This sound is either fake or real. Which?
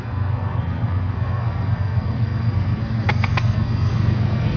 fake